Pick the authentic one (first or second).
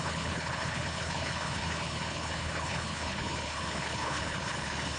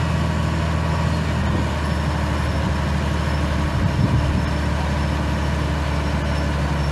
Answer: second